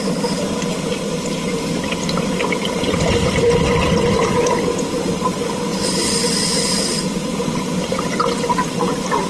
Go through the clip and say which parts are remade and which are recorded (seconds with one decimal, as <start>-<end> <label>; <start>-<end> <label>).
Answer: 0.0-9.3 recorded